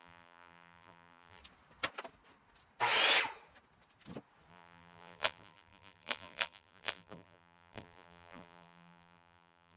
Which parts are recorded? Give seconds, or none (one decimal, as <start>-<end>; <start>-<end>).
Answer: 1.4-4.5